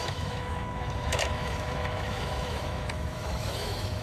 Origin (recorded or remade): remade